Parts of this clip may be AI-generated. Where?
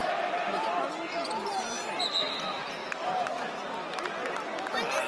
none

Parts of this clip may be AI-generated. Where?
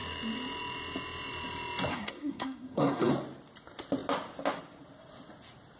1.9-3.1 (codec, SNAC)